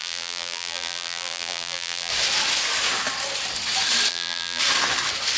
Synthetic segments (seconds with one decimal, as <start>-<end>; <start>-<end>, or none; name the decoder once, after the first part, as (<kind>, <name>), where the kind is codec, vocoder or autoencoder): 0.0-2.1 (vocoder, BigVGAN v2); 4.1-4.6